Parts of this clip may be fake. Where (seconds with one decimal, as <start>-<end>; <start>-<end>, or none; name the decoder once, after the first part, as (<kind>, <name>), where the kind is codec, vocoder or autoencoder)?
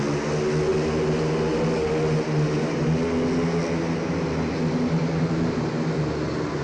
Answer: none